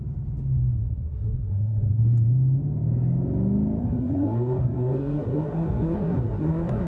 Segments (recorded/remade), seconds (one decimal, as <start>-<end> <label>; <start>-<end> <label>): 0.0-0.8 recorded; 0.8-2.0 remade; 2.0-3.8 recorded; 3.8-6.9 remade